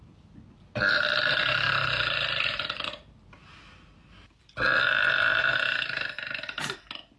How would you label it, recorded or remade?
recorded